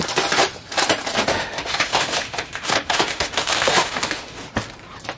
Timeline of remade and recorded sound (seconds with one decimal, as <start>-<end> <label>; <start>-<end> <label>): 0.0-1.3 recorded; 1.3-4.4 remade; 4.4-5.2 recorded